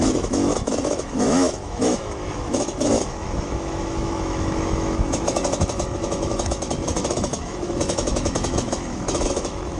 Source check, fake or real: fake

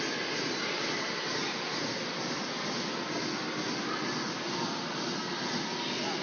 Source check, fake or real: real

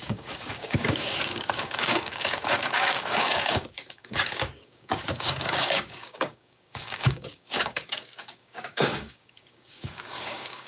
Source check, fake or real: fake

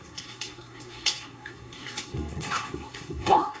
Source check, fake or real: fake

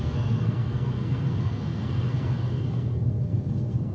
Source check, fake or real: fake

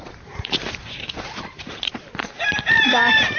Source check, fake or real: fake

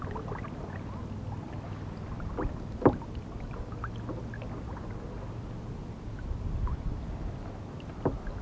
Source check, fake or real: real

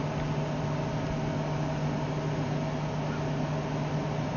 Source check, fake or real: real